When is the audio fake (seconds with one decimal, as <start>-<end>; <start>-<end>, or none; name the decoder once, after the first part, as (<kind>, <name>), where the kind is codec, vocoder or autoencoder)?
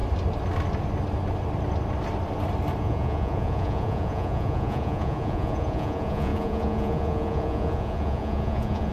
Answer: 2.8-8.9 (vocoder, Vocos)